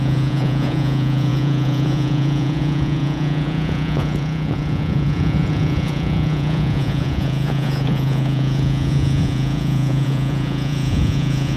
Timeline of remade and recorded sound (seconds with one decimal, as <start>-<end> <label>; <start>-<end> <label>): 0.0-11.6 remade